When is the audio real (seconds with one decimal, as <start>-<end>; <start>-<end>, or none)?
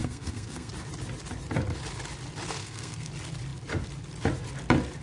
0.7-2.6; 3.1-5.0